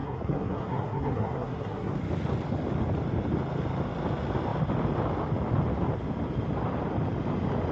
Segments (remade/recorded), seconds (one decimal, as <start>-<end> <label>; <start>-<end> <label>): 0.0-1.9 remade; 1.9-7.7 recorded

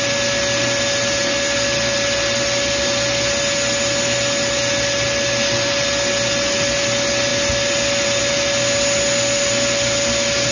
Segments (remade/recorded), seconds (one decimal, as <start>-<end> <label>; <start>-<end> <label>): 0.0-10.5 recorded

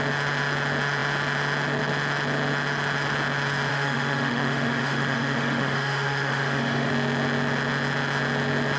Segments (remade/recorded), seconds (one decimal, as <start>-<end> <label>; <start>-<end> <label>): 0.0-3.7 recorded; 3.7-6.9 remade; 6.9-8.8 recorded

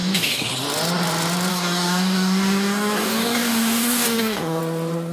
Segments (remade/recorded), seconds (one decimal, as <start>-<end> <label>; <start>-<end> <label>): 0.0-0.5 remade; 0.5-1.5 recorded; 1.5-4.6 remade; 4.6-5.1 recorded

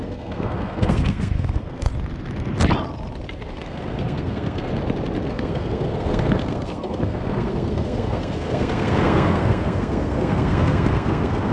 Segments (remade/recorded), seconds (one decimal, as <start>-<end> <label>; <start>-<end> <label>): 0.0-1.9 remade; 1.9-3.5 recorded; 3.5-4.7 remade; 4.7-5.3 recorded; 5.3-11.5 remade

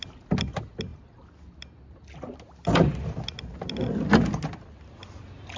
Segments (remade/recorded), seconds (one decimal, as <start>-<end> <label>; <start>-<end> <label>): 0.0-5.6 recorded

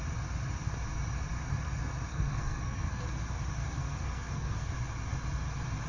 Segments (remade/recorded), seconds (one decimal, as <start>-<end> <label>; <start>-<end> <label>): 0.0-2.1 recorded; 2.1-3.0 remade; 3.0-3.6 recorded; 3.6-4.7 remade; 4.7-5.9 recorded

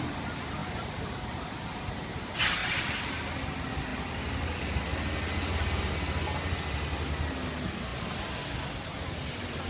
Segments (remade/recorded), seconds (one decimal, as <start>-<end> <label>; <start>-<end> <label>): 0.0-0.6 recorded; 0.6-2.2 remade; 2.2-2.6 recorded; 2.6-3.3 remade; 3.3-9.7 recorded